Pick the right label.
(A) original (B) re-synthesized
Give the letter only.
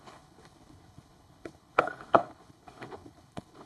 B